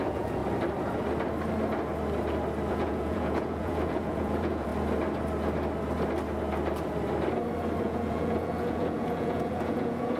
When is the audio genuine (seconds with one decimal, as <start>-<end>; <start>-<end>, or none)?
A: 0.4-2.7; 4.7-7.8